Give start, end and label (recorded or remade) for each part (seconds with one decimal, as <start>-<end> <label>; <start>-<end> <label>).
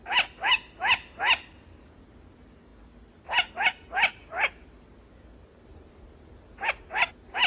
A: 0.0-7.5 recorded